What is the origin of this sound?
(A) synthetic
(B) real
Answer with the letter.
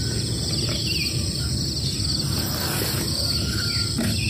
B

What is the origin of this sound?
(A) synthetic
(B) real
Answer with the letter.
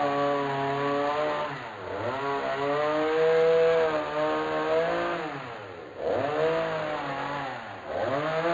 B